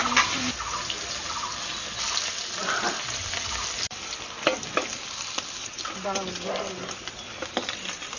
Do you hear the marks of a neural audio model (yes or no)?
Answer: no